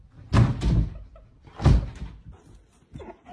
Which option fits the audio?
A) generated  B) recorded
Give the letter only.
B